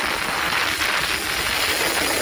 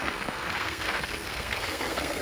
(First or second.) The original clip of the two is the first